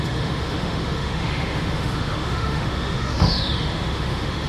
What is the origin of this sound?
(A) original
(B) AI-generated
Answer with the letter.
B